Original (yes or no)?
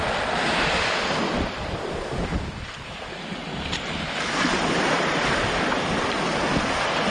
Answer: yes